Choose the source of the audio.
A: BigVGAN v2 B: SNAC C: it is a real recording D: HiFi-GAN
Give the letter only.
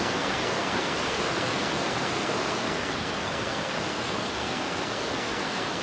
B